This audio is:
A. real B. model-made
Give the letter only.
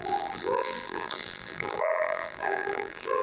B